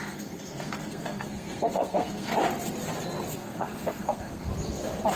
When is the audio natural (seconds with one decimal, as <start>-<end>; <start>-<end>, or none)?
2.3-3.3; 4.5-5.2